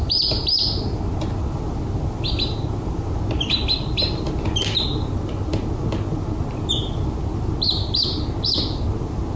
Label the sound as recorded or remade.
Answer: recorded